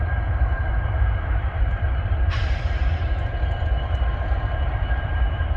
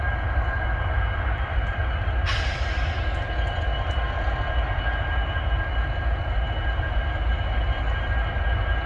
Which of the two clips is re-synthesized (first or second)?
first